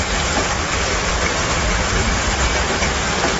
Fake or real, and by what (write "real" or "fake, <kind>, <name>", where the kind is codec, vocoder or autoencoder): fake, vocoder, BigVGAN v2